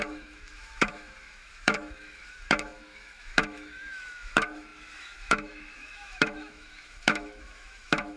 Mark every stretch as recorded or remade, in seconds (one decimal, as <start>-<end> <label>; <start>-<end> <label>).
0.0-8.2 remade